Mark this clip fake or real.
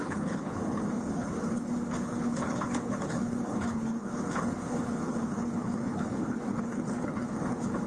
fake